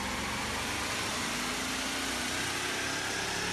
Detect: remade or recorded recorded